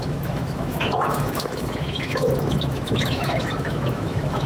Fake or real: fake